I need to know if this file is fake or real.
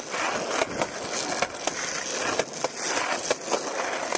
real